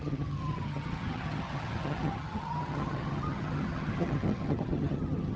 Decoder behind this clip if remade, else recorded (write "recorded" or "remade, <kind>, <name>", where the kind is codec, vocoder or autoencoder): remade, vocoder, HiFi-GAN